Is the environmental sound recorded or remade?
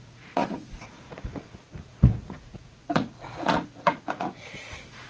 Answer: remade